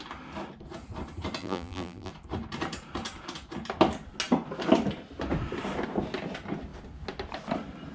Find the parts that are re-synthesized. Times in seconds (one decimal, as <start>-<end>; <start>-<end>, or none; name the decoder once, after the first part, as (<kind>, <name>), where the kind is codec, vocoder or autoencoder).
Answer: 1.4-2.1 (vocoder, BigVGAN v2)